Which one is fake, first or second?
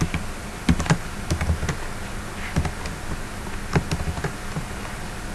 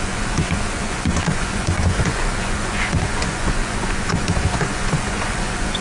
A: second